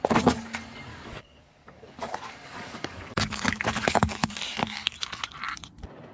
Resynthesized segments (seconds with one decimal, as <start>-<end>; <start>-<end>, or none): 0.9-4.3